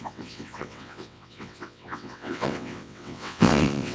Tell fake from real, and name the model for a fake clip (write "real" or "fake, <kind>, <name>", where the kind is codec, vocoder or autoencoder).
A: fake, vocoder, WaveNeXt